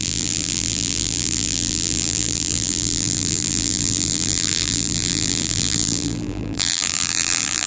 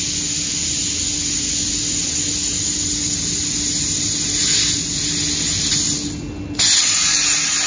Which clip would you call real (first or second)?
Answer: second